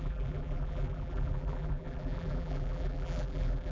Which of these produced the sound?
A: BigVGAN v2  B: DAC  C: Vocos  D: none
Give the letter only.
A